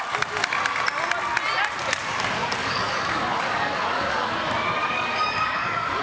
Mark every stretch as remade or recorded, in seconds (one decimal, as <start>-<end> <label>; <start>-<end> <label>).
0.0-2.6 recorded; 2.6-4.3 remade; 4.3-4.8 recorded; 4.8-6.0 remade